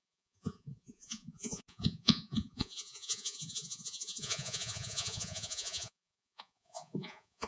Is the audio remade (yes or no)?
yes